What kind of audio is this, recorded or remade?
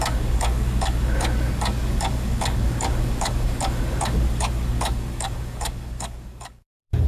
remade